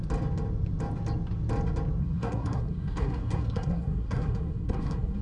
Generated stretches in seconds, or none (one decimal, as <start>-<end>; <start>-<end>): 2.0-5.2